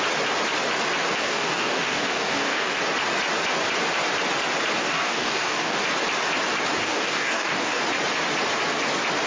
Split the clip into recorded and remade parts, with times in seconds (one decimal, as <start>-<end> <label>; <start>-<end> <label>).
0.0-1.2 recorded; 1.2-2.8 remade; 2.8-4.8 recorded; 4.8-5.8 remade; 5.8-6.8 recorded; 6.8-7.8 remade; 7.8-9.3 recorded